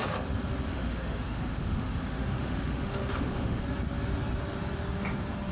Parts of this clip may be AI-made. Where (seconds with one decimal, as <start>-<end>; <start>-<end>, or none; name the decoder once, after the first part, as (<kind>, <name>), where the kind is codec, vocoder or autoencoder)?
0.7-3.6 (autoencoder, DAC-VAE)